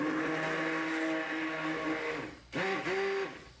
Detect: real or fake real